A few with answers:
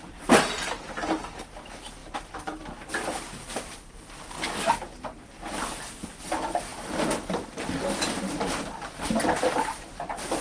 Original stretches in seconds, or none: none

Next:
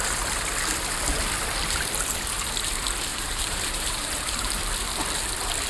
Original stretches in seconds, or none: 0.0-3.1; 4.7-5.7

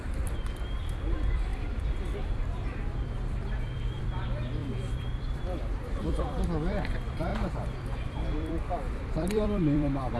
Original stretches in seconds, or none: none

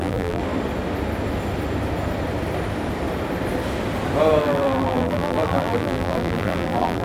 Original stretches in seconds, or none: 0.4-4.4